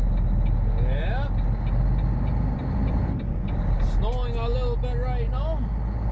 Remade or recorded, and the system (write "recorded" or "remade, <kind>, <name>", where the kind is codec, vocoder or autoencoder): recorded